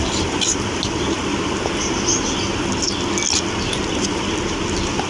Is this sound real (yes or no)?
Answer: yes